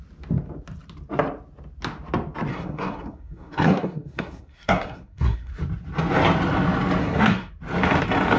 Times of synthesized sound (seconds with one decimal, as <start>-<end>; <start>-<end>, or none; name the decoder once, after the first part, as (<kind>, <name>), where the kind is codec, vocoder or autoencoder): 2.5-5.5 (codec, SNAC); 7.0-7.5